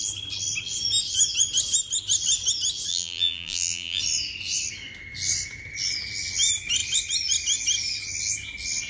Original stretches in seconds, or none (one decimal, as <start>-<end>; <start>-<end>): 0.0-2.9; 4.0-8.9